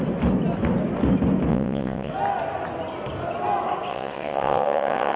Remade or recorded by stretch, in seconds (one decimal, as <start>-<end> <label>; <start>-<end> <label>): 0.0-1.5 recorded; 1.5-2.1 remade; 2.1-3.9 recorded; 3.9-5.2 remade